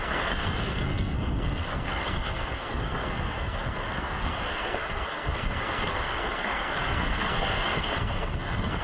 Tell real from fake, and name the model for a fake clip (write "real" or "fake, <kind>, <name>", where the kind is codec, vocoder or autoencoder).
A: fake, codec, SNAC